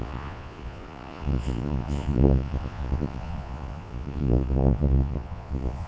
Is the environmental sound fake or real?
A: fake